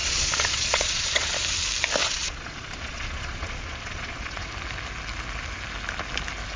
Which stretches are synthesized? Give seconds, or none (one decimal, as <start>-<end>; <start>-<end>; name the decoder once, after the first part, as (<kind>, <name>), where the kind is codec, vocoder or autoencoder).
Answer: 0.0-1.3 (vocoder, Vocos); 2.0-4.5